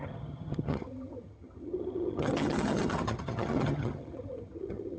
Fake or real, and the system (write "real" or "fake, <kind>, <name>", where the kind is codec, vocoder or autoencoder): fake, vocoder, HiFi-GAN